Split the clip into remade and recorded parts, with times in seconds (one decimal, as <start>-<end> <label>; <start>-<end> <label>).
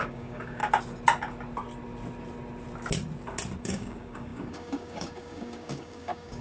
0.0-0.6 remade; 0.6-3.6 recorded; 3.6-6.4 remade